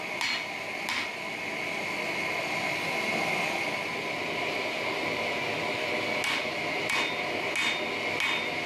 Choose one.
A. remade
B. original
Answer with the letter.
B